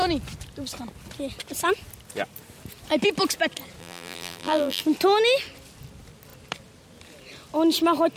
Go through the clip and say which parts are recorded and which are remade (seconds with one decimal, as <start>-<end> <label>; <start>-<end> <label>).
0.0-3.8 recorded; 3.8-4.8 remade; 4.8-8.2 recorded